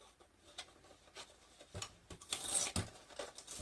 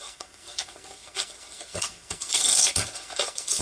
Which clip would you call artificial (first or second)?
second